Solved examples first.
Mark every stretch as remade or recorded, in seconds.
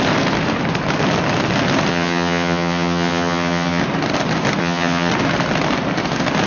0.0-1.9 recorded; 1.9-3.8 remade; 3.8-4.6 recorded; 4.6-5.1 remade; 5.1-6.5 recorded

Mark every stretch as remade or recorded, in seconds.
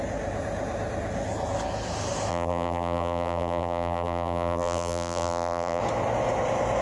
0.0-2.3 recorded; 2.3-5.8 remade; 5.8-6.8 recorded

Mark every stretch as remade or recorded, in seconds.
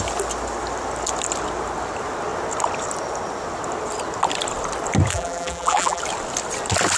0.0-5.1 recorded; 5.1-6.0 remade; 6.0-7.0 recorded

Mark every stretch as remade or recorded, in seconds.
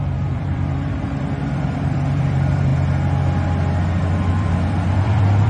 0.0-2.7 remade; 2.7-4.0 recorded; 4.0-5.5 remade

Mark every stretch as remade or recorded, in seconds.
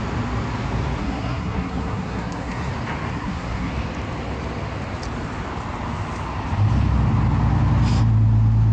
0.0-1.0 recorded; 1.0-2.7 remade; 2.7-3.1 recorded; 3.1-3.7 remade; 3.7-8.7 recorded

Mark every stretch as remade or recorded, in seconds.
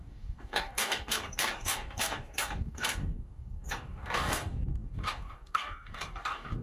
0.0-6.6 remade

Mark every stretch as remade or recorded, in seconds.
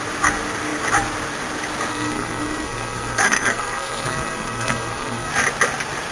0.0-1.9 recorded; 1.9-5.3 remade; 5.3-6.1 recorded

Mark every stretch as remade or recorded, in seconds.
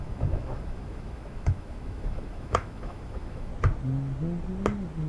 0.0-3.5 remade; 3.5-5.1 recorded